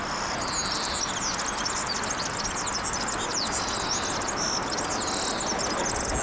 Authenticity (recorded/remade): recorded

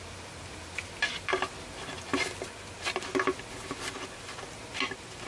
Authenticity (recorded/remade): recorded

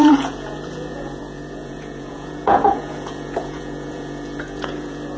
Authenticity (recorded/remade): remade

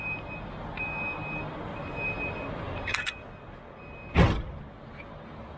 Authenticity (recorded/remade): recorded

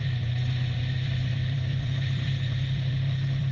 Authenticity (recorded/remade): remade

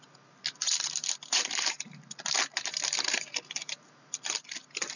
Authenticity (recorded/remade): recorded